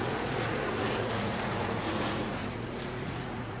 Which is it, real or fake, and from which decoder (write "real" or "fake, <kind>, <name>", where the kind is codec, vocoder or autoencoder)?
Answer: fake, vocoder, Vocos